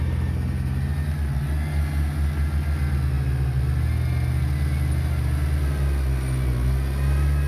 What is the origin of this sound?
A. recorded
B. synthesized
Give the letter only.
A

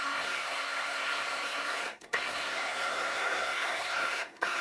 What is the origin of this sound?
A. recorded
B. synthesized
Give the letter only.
B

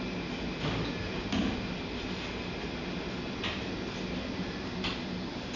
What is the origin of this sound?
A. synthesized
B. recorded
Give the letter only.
B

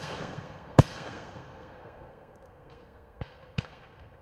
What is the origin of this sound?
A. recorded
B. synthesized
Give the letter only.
B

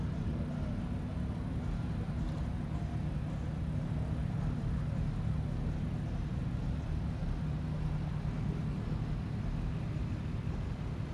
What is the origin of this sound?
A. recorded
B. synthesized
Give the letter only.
A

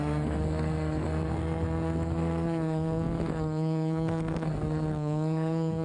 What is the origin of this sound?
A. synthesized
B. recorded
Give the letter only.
A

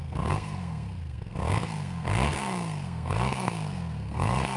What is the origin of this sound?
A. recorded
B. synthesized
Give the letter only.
B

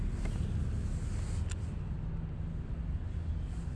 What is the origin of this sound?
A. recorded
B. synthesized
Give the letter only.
A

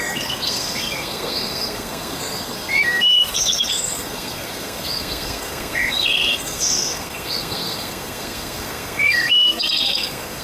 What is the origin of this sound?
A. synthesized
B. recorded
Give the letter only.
A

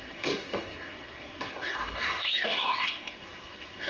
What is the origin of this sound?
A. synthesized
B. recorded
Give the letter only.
A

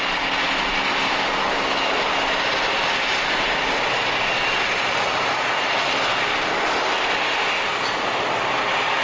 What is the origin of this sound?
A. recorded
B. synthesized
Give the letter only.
A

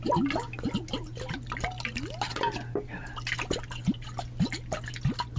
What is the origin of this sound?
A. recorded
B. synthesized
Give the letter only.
A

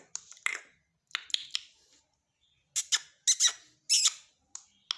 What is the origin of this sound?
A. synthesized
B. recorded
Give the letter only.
B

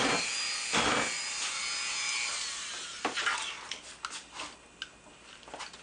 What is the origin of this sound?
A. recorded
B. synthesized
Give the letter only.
A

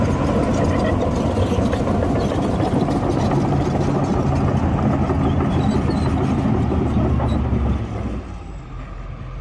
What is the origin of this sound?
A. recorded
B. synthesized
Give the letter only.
A